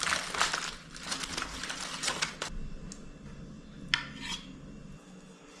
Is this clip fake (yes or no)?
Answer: no